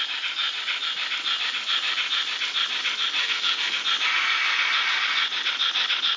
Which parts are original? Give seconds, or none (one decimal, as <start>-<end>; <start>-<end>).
0.0-3.2; 3.8-6.2